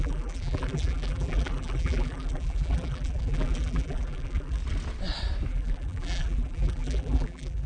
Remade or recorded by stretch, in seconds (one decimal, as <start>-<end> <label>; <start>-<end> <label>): 0.0-4.6 remade; 4.6-5.5 recorded; 5.5-7.7 remade